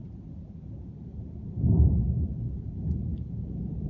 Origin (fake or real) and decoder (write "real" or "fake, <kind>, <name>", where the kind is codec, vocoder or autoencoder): real